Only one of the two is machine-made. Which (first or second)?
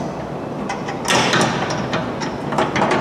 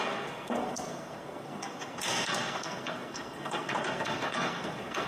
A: second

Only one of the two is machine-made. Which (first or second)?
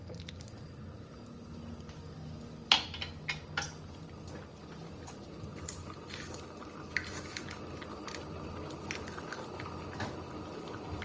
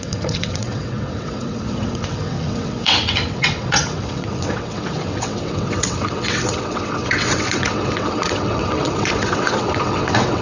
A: second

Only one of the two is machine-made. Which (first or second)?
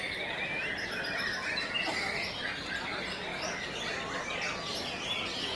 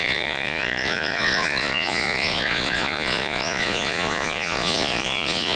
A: second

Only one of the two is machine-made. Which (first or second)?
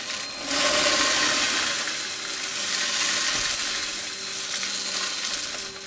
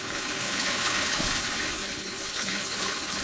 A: second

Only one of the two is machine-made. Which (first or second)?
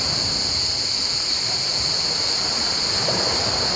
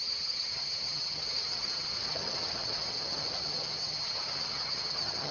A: second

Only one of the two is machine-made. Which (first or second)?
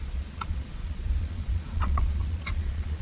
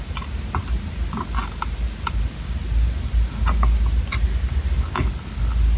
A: first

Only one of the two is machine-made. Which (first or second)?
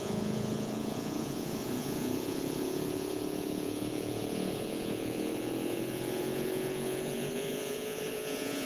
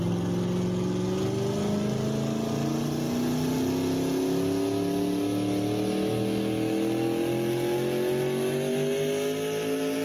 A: first